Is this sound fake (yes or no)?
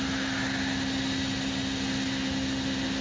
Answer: no